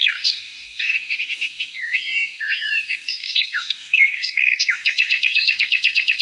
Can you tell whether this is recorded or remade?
remade